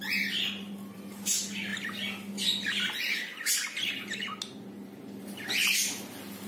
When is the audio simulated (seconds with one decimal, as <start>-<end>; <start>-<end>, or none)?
none